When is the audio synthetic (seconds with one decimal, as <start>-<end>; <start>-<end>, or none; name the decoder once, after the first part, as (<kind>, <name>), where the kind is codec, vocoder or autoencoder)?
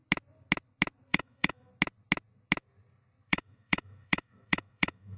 1.1-1.7 (autoencoder, DAC-VAE); 3.3-5.2